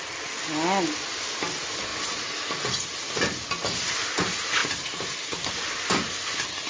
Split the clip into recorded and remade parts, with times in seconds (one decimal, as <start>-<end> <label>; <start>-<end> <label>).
0.0-6.7 recorded

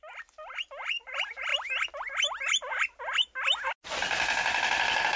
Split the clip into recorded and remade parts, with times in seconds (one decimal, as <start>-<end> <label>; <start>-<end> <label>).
0.0-5.2 recorded

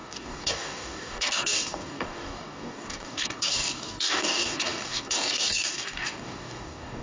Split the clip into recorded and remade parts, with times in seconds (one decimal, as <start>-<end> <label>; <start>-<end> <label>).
0.0-7.0 remade

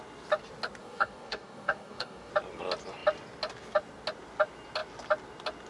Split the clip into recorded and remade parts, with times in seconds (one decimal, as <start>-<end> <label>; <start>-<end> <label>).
0.0-0.8 recorded; 0.8-2.3 remade; 2.3-5.7 recorded

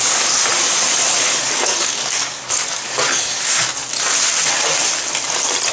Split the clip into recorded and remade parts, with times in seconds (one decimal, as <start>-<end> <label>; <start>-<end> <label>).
0.0-0.4 remade; 0.4-1.2 recorded; 1.2-3.8 remade; 3.8-5.7 recorded

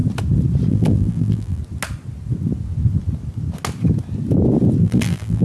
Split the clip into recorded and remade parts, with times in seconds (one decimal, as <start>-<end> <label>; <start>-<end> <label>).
0.0-0.7 recorded; 0.7-1.6 remade; 1.6-4.8 recorded; 4.8-5.4 remade

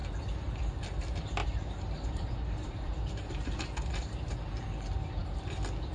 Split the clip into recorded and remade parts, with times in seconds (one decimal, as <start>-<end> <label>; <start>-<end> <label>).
0.0-1.4 recorded; 1.4-3.6 remade; 3.6-5.9 recorded

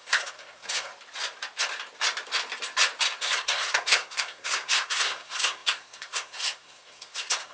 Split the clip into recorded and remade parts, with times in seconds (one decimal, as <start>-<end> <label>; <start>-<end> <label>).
0.0-0.9 remade; 0.9-3.2 recorded; 3.2-7.5 remade